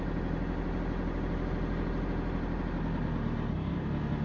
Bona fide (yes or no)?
yes